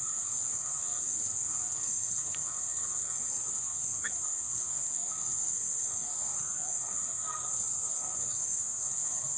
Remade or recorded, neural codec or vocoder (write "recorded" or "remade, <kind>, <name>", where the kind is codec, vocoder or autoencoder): remade, codec, SNAC